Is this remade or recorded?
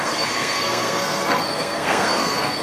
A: remade